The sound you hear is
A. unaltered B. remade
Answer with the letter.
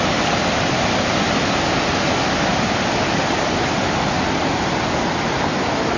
A